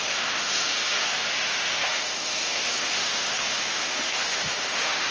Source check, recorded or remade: remade